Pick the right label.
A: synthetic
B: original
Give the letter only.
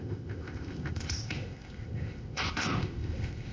A